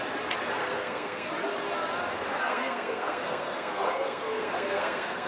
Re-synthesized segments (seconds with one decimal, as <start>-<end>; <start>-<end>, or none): 0.6-1.3; 2.3-5.3